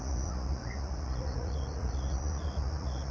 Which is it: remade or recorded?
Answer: remade